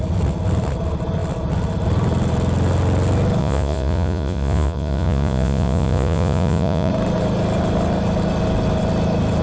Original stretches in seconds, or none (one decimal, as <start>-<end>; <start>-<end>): 0.0-3.4; 6.9-9.4

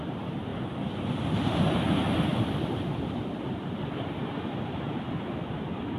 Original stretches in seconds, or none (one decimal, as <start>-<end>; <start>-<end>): 0.0-6.0

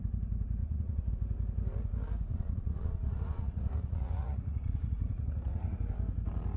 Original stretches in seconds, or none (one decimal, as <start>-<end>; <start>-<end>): 0.0-0.6; 1.1-2.3; 5.8-6.6

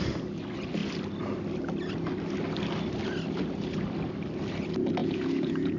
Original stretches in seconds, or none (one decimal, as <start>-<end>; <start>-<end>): 0.0-5.0

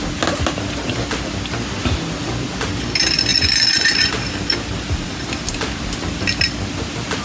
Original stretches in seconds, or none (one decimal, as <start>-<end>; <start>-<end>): 0.0-3.3; 4.2-7.2

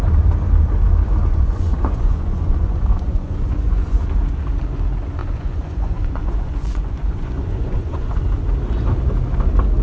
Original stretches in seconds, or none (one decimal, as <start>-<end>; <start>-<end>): 0.0-1.2; 4.0-5.2; 8.2-9.8

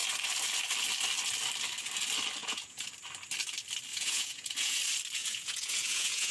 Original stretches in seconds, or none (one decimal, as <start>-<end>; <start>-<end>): 0.0-2.4; 2.9-3.9; 4.8-5.2

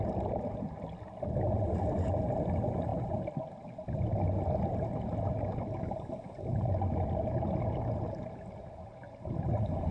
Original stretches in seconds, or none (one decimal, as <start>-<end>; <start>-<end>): 0.0-9.9